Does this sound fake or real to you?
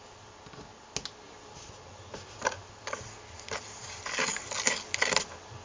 real